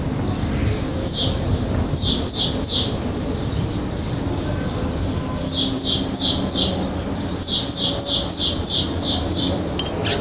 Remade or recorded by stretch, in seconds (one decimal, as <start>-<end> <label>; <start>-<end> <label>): 0.0-0.9 recorded; 0.9-3.7 remade; 3.7-10.2 recorded